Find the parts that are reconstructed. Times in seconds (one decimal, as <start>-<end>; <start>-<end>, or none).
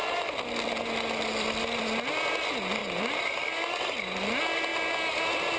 none